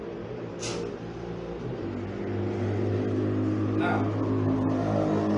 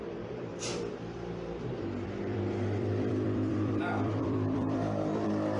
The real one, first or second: first